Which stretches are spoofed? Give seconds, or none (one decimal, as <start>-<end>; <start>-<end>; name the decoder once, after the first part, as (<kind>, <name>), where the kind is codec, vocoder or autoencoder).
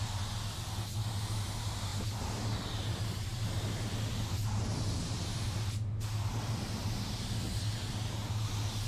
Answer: none